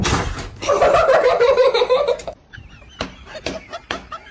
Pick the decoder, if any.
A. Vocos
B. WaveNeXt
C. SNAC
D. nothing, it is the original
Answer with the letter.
D